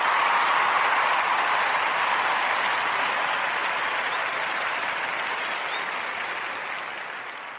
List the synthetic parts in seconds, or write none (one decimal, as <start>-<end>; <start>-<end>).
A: none